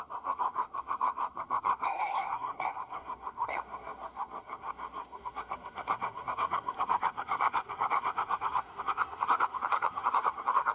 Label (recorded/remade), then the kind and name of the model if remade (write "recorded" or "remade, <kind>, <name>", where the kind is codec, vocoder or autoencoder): remade, codec, SNAC